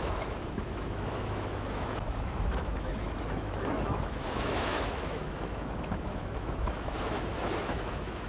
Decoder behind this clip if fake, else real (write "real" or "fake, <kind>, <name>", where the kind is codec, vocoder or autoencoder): fake, autoencoder, DAC-VAE